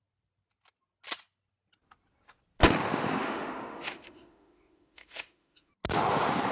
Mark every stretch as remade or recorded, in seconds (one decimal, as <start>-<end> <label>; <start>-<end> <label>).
0.0-3.2 recorded; 3.2-5.7 remade; 5.7-6.5 recorded